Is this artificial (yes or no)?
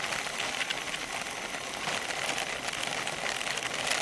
no